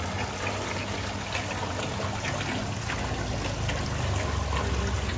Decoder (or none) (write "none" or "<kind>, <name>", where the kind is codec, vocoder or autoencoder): none